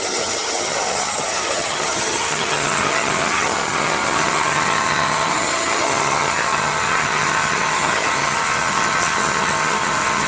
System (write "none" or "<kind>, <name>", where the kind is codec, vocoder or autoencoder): vocoder, HiFi-GAN